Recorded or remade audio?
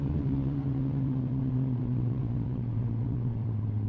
remade